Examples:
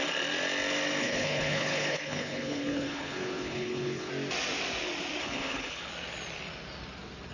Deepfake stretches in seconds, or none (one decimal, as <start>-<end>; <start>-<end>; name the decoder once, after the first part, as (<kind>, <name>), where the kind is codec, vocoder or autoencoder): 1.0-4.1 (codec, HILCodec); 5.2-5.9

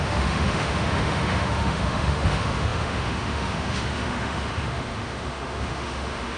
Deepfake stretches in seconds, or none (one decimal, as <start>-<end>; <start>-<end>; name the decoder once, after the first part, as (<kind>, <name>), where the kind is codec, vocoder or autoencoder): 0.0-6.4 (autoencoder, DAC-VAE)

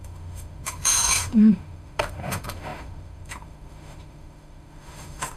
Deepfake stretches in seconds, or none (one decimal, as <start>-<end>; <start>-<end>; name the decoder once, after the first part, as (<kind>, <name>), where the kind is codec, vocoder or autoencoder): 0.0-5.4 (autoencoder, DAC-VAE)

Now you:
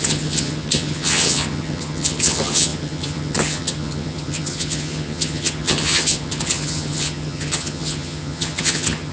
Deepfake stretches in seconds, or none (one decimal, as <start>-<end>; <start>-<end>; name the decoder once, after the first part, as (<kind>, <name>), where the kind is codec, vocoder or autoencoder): 0.0-9.1 (vocoder, HiFi-GAN)

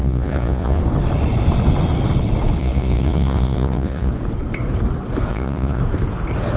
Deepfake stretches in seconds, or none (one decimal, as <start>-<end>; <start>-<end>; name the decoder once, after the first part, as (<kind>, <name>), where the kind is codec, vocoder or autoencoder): 0.0-0.8 (vocoder, Vocos); 2.6-4.1; 5.3-5.8